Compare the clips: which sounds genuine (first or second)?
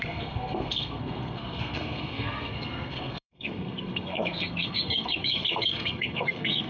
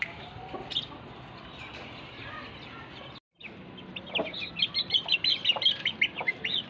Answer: second